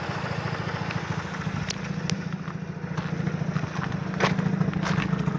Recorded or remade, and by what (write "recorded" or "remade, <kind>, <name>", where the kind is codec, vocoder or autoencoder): recorded